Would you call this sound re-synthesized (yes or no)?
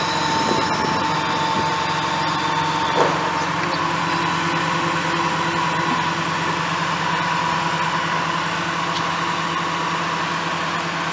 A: no